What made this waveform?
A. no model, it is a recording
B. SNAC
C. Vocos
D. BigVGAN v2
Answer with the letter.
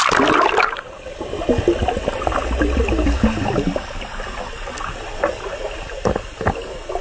A